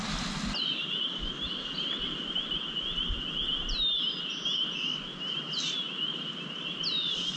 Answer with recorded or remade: recorded